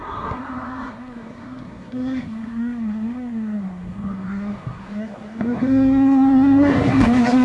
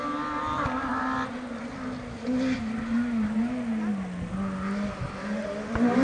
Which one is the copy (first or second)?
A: first